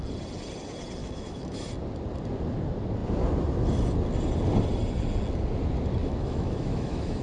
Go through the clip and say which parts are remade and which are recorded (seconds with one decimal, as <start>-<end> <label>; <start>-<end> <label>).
0.0-1.0 recorded; 1.0-1.7 remade; 1.7-6.0 recorded; 6.0-7.2 remade